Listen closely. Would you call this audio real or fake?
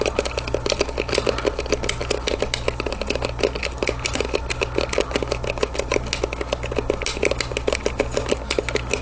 real